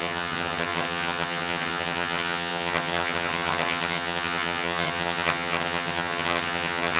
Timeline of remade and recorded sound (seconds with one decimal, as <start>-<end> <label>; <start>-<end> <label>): 0.0-7.0 remade